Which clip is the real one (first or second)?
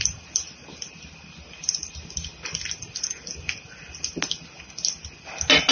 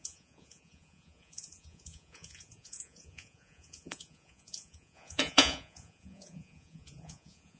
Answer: first